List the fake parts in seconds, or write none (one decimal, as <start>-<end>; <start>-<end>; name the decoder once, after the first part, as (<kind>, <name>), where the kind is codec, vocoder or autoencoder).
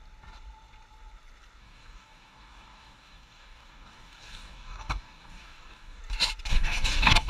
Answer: 1.6-6.0 (codec, DAC); 6.5-7.3